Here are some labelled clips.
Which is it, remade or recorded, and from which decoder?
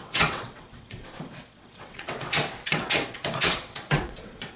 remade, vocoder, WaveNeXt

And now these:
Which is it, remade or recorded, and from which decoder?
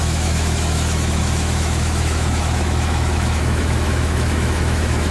remade, autoencoder, DAC-VAE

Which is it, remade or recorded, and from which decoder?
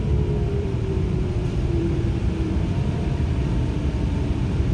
remade, vocoder, BigVGAN v2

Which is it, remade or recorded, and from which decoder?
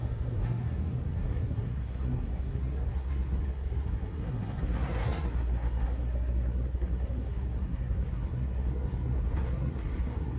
remade, codec, SNAC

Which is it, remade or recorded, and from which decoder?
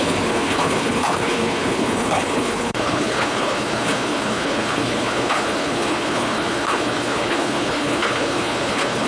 remade, codec, HILCodec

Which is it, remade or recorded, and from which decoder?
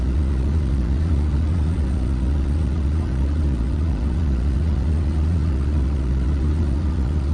remade, vocoder, Vocos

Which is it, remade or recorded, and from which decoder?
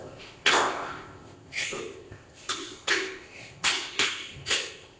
remade, codec, ZipCodec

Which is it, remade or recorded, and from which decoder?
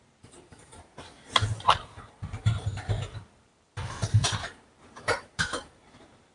remade, vocoder, BigVGAN v2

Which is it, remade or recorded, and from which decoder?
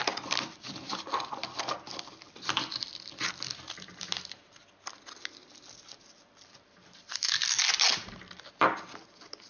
recorded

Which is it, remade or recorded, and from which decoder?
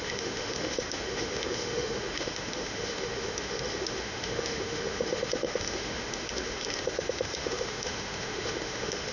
remade, autoencoder, DAC-VAE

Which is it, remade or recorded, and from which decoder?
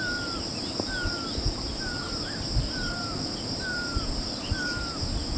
recorded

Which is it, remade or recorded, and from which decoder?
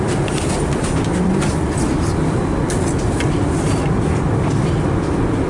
remade, vocoder, BigVGAN v2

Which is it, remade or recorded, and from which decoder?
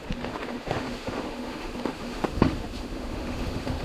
remade, autoencoder, DAC-VAE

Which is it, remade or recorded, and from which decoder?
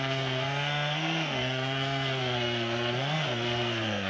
remade, codec, SNAC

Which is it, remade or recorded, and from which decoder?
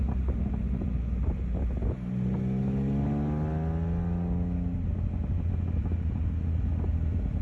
recorded